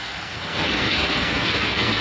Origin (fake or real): fake